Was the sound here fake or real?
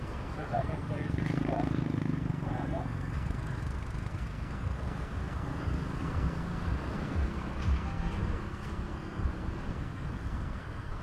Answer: fake